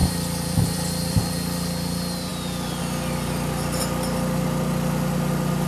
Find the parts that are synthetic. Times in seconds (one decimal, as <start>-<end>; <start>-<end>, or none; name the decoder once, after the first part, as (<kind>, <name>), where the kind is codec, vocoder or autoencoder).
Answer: 0.0-1.2 (vocoder, BigVGAN v2)